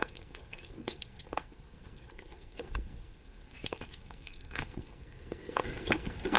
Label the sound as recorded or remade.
remade